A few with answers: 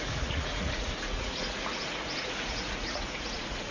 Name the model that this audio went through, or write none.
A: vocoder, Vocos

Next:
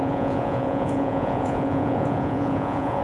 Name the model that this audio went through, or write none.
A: vocoder, Vocos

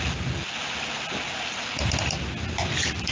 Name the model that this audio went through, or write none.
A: none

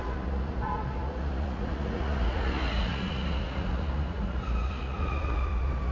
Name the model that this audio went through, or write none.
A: vocoder, Vocos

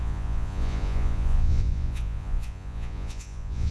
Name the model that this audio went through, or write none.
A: vocoder, Vocos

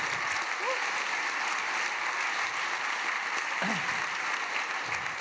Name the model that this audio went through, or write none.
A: none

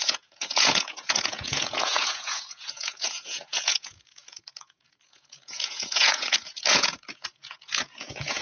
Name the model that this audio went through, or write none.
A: vocoder, Vocos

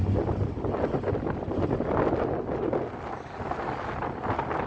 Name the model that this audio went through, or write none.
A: none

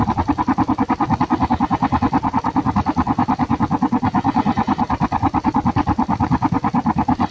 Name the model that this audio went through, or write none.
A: none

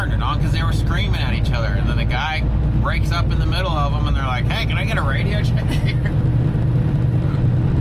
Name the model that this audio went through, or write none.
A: none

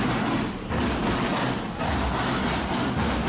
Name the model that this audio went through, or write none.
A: none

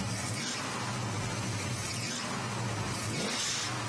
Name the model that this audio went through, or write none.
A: none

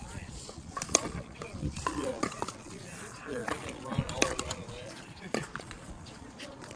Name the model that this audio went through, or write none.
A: vocoder, Vocos